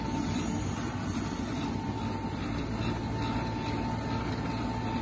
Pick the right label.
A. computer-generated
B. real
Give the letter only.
B